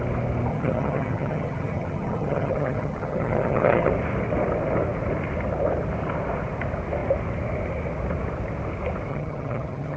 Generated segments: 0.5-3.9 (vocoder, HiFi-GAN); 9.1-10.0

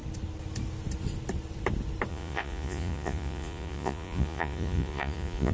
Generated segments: 2.1-5.5 (vocoder, Vocos)

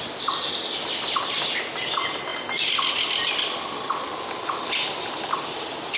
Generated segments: none

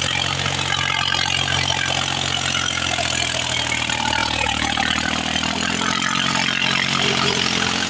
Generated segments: 4.2-4.8 (vocoder, Vocos)

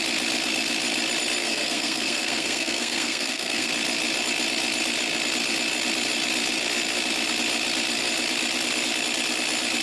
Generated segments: 1.4-3.7 (codec, SNAC)

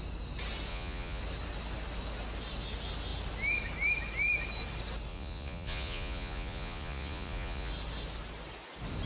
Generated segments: 0.7-1.2 (vocoder, Vocos); 5.1-7.7

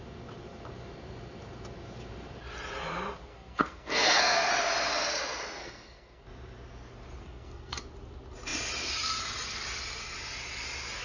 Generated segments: 3.3-4.5 (codec, SNAC); 5.6-6.2; 7.2-7.8